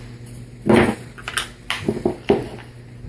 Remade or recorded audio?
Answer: recorded